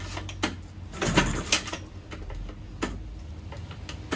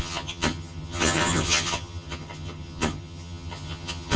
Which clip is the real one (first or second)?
first